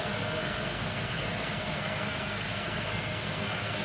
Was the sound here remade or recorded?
remade